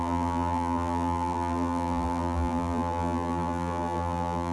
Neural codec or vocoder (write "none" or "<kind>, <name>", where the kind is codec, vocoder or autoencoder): vocoder, BigVGAN v2